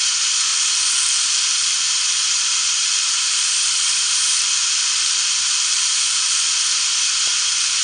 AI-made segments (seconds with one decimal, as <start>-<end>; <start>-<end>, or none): 0.5-1.0; 2.8-6.5; 7.2-7.8